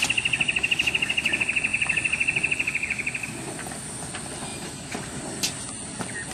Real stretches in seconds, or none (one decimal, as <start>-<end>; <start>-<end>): 0.0-4.5; 5.2-6.3